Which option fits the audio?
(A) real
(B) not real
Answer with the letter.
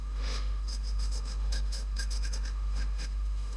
B